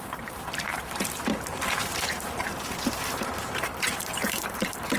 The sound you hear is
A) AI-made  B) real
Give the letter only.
A